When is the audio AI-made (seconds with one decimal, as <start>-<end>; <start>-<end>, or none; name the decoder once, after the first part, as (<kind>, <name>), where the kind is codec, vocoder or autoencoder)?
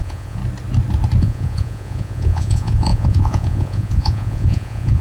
0.0-0.4 (vocoder, Vocos); 1.2-5.0